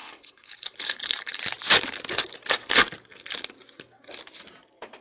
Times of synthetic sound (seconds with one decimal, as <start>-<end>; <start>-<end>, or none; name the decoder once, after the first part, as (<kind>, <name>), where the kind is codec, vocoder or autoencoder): 0.0-1.4 (codec, HILCodec)